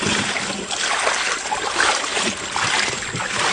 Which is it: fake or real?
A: real